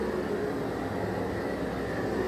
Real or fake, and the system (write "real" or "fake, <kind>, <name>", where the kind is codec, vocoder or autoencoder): real